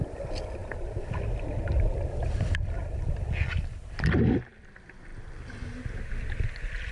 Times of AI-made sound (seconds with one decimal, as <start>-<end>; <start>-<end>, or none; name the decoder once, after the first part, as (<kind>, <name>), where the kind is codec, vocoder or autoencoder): none